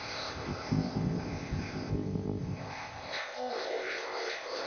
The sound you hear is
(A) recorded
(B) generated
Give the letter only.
B